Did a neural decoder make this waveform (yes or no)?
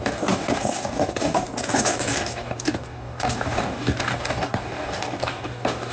yes